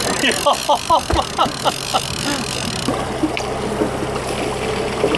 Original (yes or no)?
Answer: yes